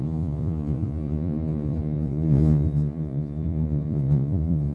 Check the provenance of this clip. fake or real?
fake